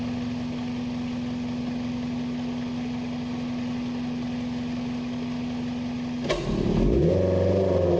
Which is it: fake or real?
real